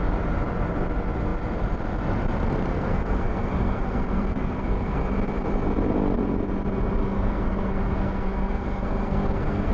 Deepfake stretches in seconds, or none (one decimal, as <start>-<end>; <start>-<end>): 2.7-5.0; 7.0-9.7